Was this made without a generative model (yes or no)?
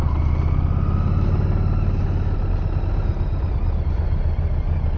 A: yes